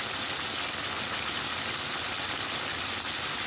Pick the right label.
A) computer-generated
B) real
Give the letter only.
B